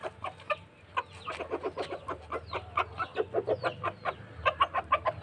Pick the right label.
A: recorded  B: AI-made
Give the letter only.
A